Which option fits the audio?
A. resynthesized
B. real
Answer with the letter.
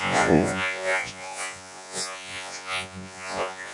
A